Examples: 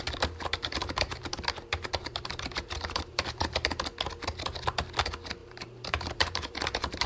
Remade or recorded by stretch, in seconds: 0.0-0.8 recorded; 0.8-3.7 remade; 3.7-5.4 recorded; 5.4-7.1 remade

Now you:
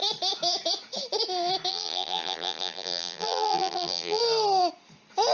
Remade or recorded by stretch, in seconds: 0.0-1.7 recorded; 1.7-4.2 remade; 4.2-5.3 recorded

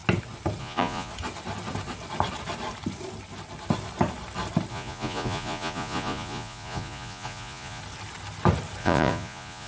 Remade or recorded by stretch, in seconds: 0.0-0.6 recorded; 0.6-1.1 remade; 1.1-4.7 recorded; 4.7-7.8 remade; 7.8-8.8 recorded; 8.8-9.7 remade

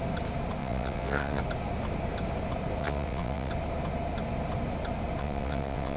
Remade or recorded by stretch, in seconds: 0.0-0.6 recorded; 0.6-1.4 remade; 1.4-2.8 recorded; 2.8-3.5 remade; 3.5-5.2 recorded; 5.2-6.0 remade